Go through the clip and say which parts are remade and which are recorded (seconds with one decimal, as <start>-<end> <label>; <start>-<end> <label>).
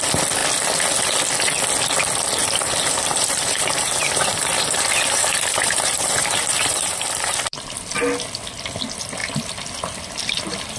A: 0.0-2.4 recorded; 2.4-7.3 remade; 7.3-10.8 recorded